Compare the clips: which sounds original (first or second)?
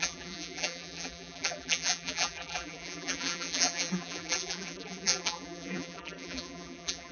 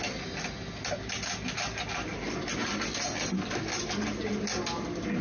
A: second